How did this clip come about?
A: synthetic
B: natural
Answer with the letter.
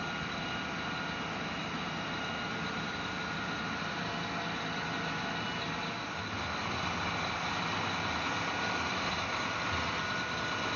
B